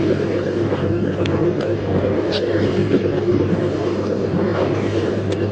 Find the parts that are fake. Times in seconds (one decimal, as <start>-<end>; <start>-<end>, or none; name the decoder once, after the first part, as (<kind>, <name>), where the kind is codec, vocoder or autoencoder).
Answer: 0.0-5.5 (codec, DAC)